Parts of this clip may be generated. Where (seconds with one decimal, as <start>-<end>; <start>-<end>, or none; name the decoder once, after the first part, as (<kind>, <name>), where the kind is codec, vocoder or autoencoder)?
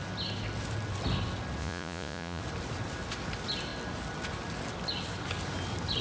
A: 1.6-2.4 (vocoder, Vocos)